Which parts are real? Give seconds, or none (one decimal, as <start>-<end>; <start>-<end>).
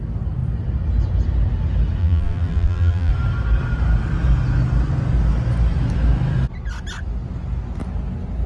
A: 0.0-2.0; 3.1-8.5